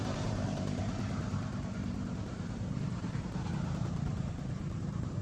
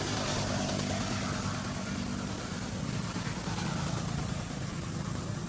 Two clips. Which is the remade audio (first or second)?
first